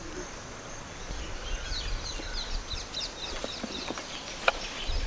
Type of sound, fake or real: real